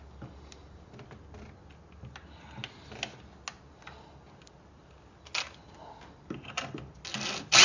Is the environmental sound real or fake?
real